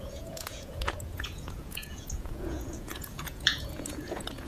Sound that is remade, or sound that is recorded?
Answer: remade